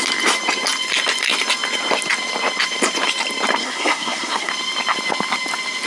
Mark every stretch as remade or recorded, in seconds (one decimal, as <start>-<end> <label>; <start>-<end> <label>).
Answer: 0.0-3.6 recorded; 3.6-4.5 remade; 4.5-5.9 recorded